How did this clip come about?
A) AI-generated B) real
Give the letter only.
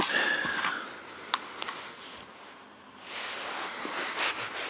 B